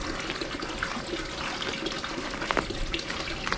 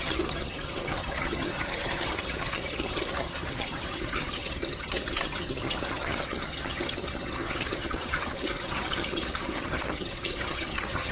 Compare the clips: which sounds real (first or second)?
first